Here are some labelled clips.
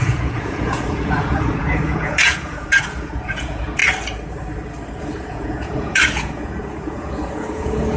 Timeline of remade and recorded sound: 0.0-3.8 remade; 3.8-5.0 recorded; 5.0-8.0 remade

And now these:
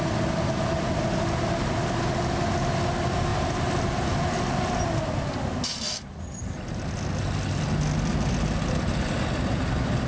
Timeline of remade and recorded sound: 0.0-10.1 recorded